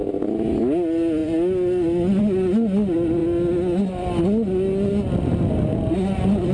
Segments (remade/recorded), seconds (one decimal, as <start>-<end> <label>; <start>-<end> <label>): 0.0-6.5 recorded